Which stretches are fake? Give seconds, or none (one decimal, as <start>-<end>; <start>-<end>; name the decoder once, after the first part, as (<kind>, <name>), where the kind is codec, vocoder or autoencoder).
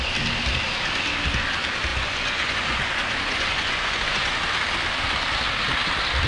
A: 1.9-4.4 (vocoder, Vocos)